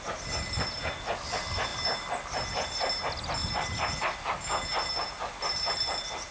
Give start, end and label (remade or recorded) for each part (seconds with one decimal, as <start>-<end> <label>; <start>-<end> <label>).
0.0-6.3 recorded